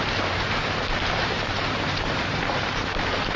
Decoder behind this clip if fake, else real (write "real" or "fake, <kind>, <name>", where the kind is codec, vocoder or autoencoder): fake, vocoder, BigVGAN v2